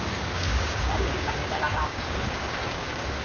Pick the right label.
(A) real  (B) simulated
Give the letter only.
B